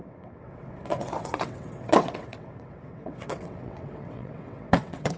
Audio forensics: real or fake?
fake